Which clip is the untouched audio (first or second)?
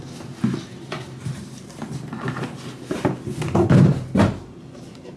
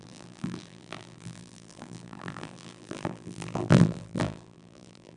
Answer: first